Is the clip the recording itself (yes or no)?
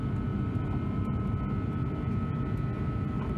yes